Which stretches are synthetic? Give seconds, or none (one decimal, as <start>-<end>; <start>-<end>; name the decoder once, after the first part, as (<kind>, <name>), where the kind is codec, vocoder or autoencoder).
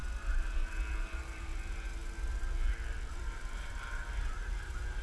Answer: 1.0-1.5 (vocoder, BigVGAN v2); 3.1-5.0